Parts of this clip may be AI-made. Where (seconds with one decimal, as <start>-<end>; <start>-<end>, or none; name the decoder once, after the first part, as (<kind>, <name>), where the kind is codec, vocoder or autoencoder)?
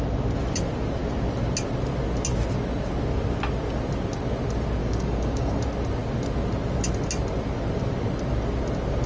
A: 4.8-5.6 (codec, DAC)